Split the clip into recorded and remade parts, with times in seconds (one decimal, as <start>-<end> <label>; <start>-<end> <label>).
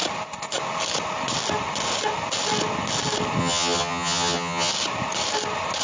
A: 0.0-3.4 recorded; 3.4-4.7 remade; 4.7-5.8 recorded